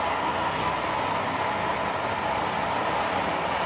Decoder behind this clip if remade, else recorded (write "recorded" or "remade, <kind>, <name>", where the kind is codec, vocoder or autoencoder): recorded